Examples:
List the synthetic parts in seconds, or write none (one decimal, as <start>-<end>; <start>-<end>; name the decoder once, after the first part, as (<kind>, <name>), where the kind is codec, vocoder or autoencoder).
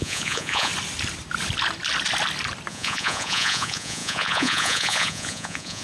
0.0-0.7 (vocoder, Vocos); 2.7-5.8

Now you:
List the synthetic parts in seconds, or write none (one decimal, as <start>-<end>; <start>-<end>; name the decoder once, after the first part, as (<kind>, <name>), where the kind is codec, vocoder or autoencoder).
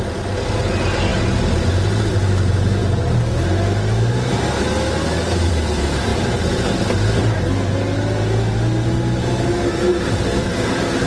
none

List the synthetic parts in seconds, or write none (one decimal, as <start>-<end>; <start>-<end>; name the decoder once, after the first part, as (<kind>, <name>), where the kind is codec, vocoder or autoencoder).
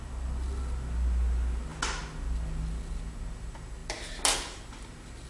none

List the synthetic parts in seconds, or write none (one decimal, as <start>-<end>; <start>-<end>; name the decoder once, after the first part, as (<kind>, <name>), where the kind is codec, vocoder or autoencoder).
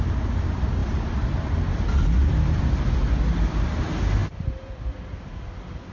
0.8-1.5 (vocoder, BigVGAN v2); 2.2-3.8; 4.2-4.8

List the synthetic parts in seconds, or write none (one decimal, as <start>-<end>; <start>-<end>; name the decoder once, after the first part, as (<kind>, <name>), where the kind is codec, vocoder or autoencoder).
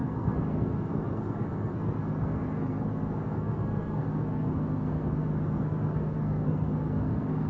0.0-7.5 (codec, SNAC)